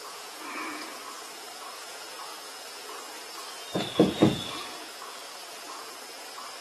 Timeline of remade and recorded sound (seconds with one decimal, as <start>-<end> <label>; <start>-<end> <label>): 0.0-6.6 remade